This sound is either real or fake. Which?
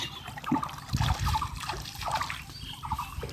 real